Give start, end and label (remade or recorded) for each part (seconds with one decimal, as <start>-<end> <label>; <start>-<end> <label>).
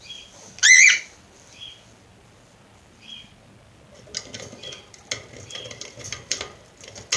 0.0-7.2 recorded